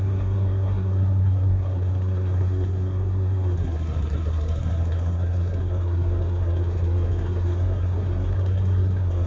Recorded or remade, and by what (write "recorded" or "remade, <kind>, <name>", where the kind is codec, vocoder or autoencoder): remade, codec, SNAC